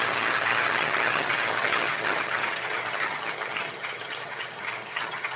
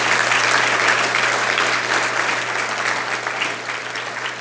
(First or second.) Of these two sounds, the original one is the second